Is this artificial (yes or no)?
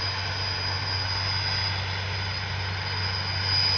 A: no